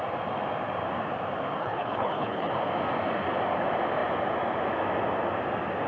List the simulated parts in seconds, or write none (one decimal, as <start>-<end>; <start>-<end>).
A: 1.6-2.5